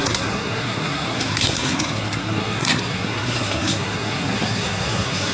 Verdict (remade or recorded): remade